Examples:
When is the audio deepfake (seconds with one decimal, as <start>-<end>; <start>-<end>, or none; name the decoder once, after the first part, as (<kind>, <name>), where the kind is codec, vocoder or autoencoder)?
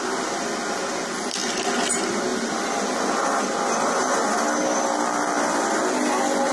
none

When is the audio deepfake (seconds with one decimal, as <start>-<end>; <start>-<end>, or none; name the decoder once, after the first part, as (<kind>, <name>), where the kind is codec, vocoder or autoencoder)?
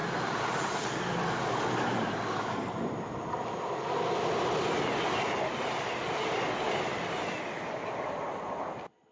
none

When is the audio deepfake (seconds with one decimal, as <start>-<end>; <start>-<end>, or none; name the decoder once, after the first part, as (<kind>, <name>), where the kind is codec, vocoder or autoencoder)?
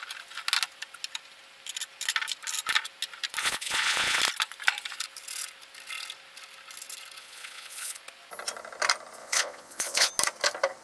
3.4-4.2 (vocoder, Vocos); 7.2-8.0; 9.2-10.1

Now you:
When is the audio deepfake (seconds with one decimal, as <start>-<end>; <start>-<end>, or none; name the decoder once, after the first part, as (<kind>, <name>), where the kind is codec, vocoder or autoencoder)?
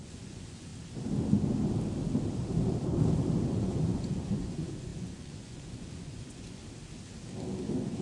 0.0-0.7 (vocoder, Vocos); 3.5-6.6; 7.6-8.0